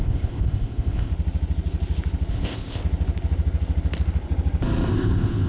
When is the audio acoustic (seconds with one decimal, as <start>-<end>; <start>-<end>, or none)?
1.1-2.3; 2.8-4.9